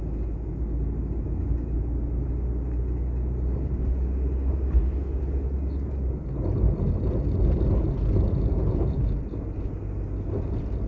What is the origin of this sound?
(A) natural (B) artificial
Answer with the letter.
A